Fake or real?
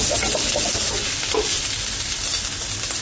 real